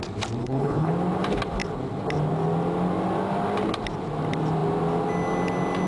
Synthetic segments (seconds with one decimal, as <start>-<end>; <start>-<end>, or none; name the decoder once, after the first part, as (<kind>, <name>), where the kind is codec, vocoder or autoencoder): 0.4-0.9 (codec, HILCodec)